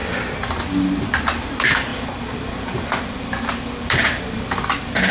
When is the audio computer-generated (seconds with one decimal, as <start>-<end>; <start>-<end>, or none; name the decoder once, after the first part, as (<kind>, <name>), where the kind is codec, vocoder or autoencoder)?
none